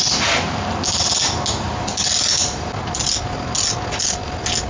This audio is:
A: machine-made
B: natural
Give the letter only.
B